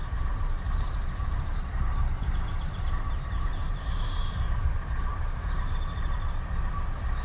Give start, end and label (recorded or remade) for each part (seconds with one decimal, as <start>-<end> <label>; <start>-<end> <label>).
0.0-4.3 remade; 4.3-5.1 recorded; 5.1-5.8 remade; 5.8-7.2 recorded